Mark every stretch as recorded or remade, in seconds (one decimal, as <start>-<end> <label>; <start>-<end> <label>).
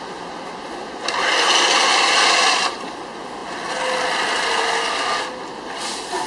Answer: 0.0-6.3 recorded